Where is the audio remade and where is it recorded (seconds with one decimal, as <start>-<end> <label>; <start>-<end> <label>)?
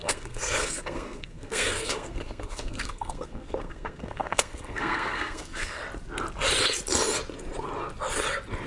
0.0-5.8 remade; 5.8-8.7 recorded